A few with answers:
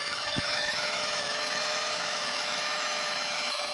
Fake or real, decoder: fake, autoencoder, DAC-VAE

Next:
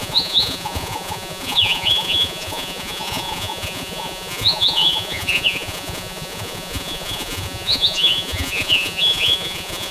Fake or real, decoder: fake, vocoder, Vocos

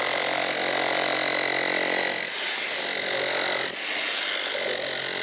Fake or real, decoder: real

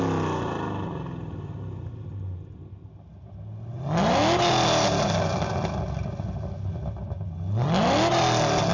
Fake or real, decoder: real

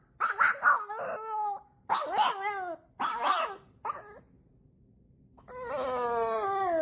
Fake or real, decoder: real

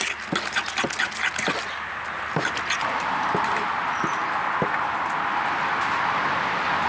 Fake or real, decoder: real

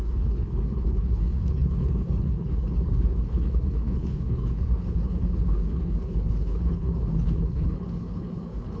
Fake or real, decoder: fake, codec, HILCodec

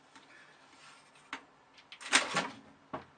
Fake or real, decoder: real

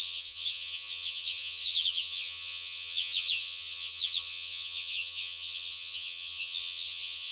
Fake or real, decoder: fake, vocoder, HiFi-GAN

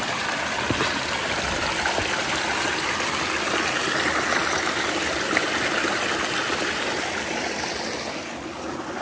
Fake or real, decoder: real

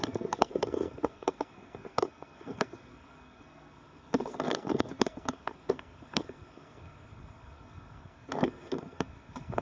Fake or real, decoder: fake, codec, SNAC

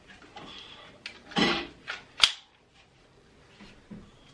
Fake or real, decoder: real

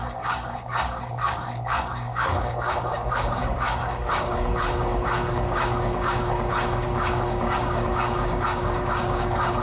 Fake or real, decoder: fake, codec, DAC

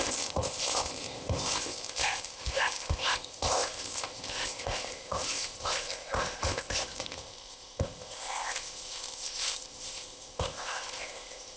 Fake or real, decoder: fake, codec, ZipCodec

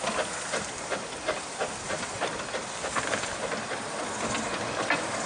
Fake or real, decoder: fake, vocoder, BigVGAN v2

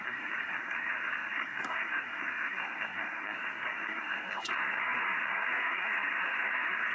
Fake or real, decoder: fake, codec, SNAC